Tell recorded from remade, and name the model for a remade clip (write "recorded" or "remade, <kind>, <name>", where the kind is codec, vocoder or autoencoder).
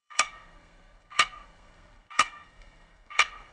remade, codec, SNAC